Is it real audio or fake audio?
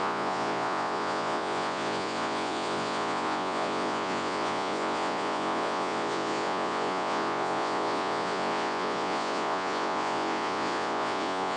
fake